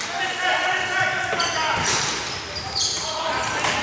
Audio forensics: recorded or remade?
recorded